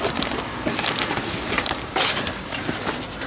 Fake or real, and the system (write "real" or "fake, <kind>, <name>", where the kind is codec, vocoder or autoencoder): real